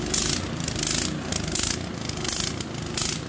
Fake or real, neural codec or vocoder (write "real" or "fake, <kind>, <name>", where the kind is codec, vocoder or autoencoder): real